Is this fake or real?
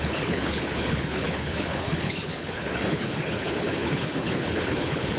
fake